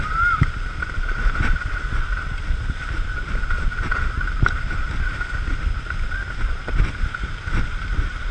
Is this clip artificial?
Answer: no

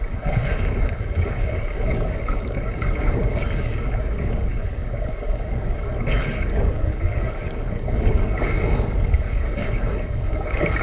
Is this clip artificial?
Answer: yes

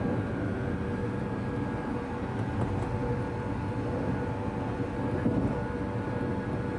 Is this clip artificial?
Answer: no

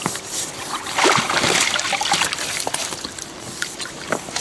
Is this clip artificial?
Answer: yes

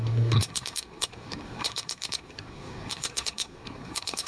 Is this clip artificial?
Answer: yes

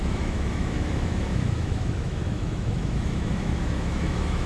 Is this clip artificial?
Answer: yes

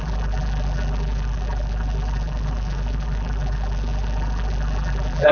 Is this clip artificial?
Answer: yes